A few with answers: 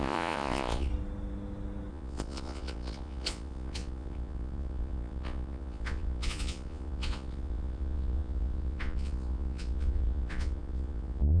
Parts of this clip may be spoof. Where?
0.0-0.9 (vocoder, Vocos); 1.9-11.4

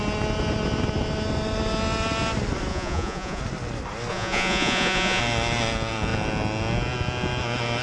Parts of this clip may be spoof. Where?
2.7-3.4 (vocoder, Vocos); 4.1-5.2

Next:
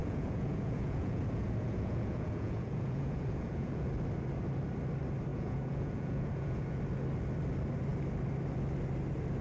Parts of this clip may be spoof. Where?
0.0-3.9 (vocoder, Vocos); 5.3-6.8